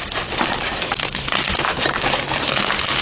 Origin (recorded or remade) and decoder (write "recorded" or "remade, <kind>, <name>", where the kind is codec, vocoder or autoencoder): recorded